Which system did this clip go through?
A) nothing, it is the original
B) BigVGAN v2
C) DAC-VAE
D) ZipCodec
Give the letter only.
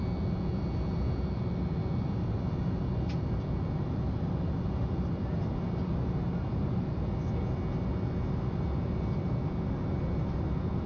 A